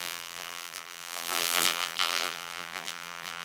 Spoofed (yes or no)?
yes